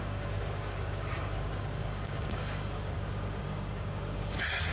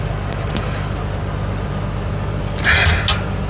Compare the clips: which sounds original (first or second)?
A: second